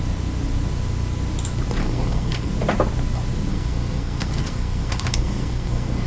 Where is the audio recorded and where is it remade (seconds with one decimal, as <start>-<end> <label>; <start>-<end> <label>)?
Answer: 0.0-1.8 recorded; 1.8-2.5 remade; 2.5-3.5 recorded; 3.5-6.1 remade